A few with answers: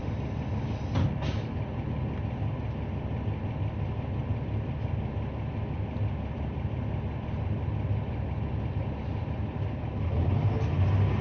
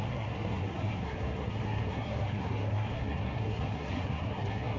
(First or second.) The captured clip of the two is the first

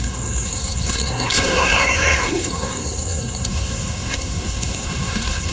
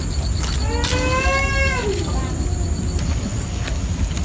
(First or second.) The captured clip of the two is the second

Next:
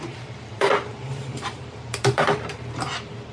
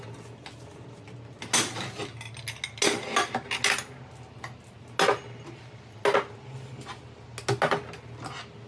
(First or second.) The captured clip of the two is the second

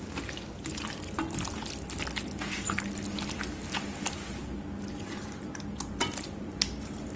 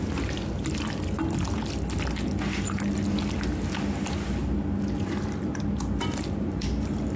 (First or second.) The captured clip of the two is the first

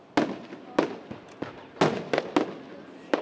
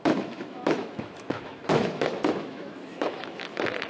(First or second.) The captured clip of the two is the first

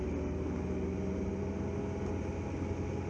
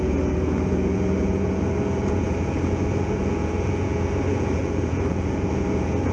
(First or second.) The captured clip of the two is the first